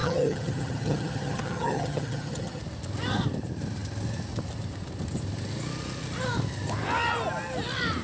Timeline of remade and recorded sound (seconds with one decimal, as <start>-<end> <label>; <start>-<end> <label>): 0.0-2.6 remade; 2.6-8.0 recorded